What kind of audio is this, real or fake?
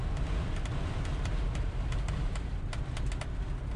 real